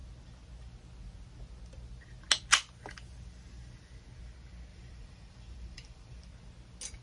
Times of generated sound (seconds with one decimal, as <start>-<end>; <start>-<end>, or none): 4.7-6.3